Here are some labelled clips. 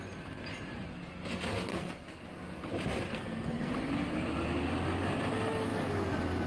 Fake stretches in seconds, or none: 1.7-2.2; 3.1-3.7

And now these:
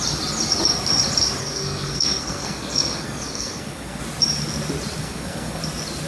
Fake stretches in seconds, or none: 1.4-4.0; 5.0-5.6

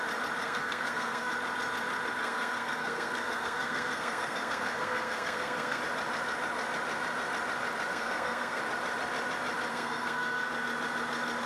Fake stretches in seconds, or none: 0.4-1.3; 2.2-5.8; 7.9-8.6; 9.7-10.5

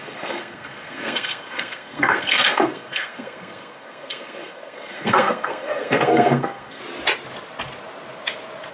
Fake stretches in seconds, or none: 0.0-6.8

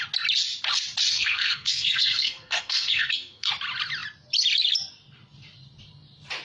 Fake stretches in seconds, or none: 1.1-3.5

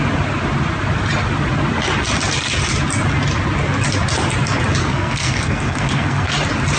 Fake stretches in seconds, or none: 4.8-6.3